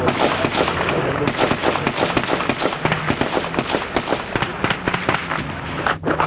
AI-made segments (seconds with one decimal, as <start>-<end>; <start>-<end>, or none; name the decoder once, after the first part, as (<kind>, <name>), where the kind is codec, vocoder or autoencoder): none